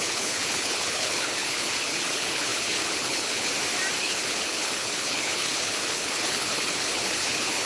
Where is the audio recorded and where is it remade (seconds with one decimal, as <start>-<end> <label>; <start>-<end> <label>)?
0.0-3.5 remade; 3.5-4.0 recorded; 4.0-7.7 remade